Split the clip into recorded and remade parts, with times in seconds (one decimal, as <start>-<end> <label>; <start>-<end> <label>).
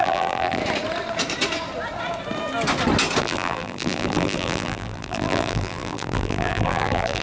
0.0-0.6 remade; 0.6-3.2 recorded; 3.2-7.2 remade